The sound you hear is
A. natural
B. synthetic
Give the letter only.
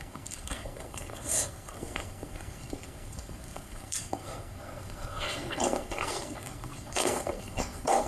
B